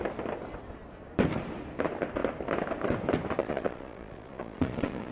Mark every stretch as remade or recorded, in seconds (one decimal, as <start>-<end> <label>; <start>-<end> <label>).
0.0-3.4 recorded; 3.4-5.1 remade